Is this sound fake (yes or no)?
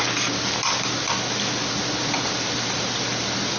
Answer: no